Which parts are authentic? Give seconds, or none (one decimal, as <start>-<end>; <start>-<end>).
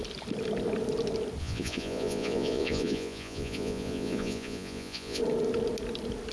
0.0-1.4; 5.2-6.3